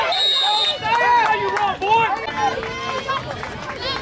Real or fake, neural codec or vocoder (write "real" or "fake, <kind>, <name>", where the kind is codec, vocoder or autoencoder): real